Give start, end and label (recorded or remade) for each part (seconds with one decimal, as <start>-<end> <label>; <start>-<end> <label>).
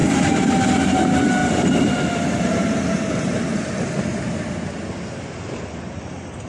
0.0-6.5 recorded